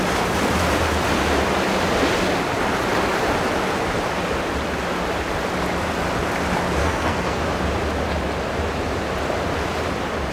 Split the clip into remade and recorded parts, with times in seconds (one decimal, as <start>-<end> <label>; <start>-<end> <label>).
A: 0.0-6.8 recorded; 6.8-7.4 remade; 7.4-10.3 recorded